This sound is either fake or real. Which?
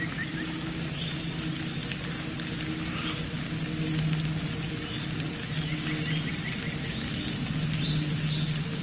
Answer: real